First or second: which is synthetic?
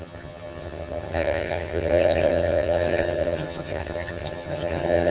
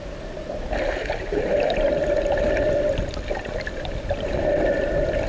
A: first